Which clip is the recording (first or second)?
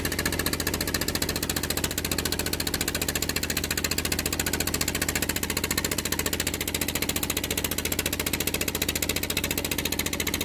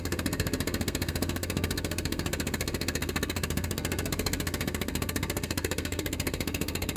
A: first